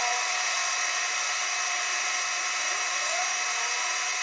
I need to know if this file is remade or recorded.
remade